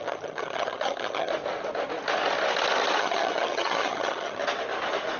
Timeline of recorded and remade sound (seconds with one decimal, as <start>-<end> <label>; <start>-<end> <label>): 0.0-1.3 remade; 1.3-3.0 recorded; 3.0-4.4 remade; 4.4-5.2 recorded